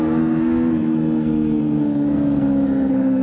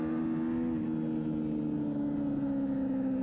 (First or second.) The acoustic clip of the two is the second